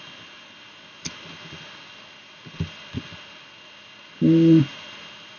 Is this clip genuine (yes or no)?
yes